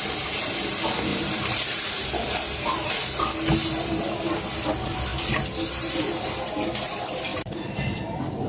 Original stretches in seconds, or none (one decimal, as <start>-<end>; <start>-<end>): 0.0-1.1; 2.9-7.3; 8.0-8.5